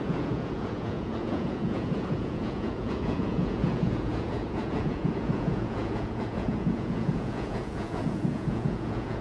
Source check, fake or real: fake